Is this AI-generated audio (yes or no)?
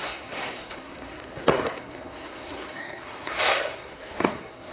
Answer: yes